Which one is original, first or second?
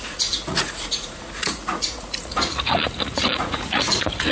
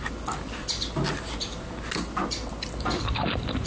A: second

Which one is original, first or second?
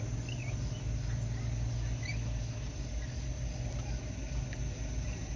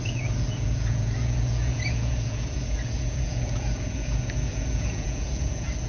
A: first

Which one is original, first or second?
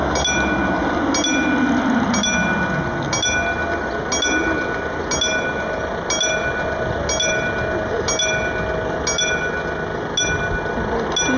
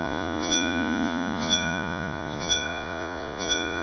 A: first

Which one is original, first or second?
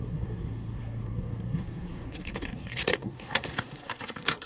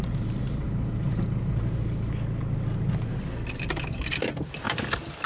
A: second